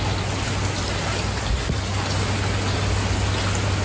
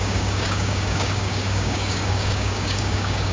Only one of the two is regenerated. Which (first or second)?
second